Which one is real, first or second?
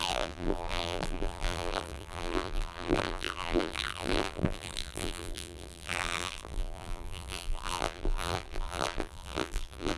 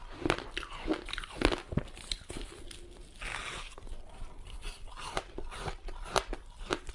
second